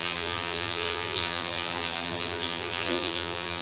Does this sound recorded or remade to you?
remade